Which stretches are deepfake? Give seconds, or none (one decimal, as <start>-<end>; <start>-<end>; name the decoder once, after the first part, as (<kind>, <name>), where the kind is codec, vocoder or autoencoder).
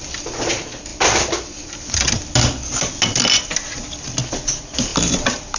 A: none